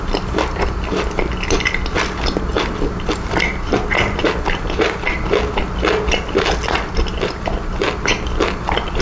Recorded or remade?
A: recorded